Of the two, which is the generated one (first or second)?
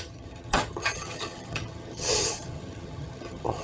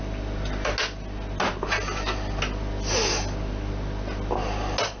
first